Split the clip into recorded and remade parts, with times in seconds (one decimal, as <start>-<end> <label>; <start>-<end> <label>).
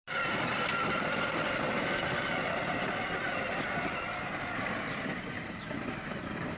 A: 0.0-6.6 recorded